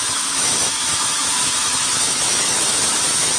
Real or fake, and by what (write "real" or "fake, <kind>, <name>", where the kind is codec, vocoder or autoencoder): fake, autoencoder, DAC-VAE